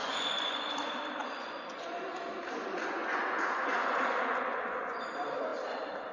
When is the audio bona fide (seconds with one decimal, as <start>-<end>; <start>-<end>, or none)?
0.7-1.2; 2.0-2.7; 5.0-6.1